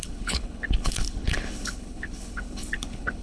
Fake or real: fake